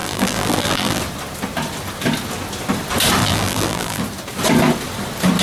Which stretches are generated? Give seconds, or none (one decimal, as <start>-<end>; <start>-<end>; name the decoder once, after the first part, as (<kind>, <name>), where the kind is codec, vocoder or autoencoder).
0.0-1.0 (vocoder, BigVGAN v2); 3.2-4.0

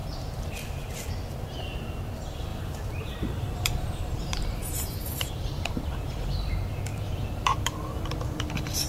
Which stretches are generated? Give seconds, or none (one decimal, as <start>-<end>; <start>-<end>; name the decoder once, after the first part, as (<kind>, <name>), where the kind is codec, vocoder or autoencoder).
2.5-6.5 (vocoder, BigVGAN v2); 6.9-8.9